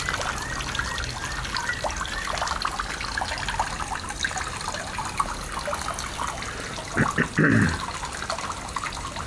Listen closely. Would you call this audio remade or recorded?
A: recorded